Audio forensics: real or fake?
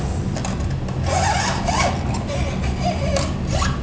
real